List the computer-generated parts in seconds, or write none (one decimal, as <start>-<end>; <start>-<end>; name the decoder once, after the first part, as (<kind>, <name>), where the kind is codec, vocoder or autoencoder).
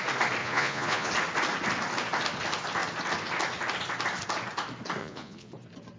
0.4-1.1 (vocoder, Vocos); 5.0-5.5